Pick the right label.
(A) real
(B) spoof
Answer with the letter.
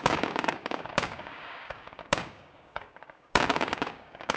B